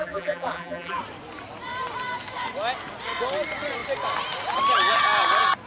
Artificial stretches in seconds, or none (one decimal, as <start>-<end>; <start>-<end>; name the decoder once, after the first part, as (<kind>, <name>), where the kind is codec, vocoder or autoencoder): 0.0-1.0 (vocoder, BigVGAN v2)